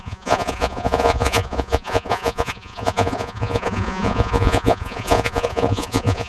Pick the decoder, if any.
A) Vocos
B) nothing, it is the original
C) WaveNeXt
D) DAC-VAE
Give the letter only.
A